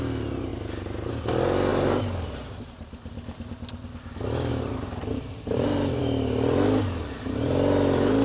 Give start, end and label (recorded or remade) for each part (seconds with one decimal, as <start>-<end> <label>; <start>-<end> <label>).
0.0-0.5 recorded; 0.5-1.1 remade; 1.1-1.7 recorded; 1.7-2.6 remade; 2.6-4.5 recorded; 4.5-6.0 remade; 6.0-8.2 recorded